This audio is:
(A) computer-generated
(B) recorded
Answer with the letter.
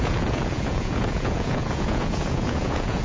A